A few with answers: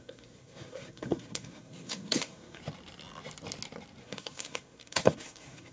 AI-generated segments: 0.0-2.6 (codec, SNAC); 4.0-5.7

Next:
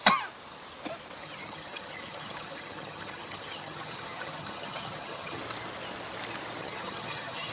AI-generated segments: 1.2-5.4 (vocoder, HiFi-GAN); 6.6-7.5

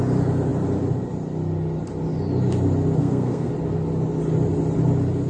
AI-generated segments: 3.0-3.5 (codec, SNAC)

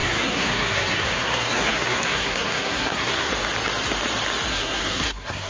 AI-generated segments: 0.0-3.3 (codec, SNAC); 4.5-5.5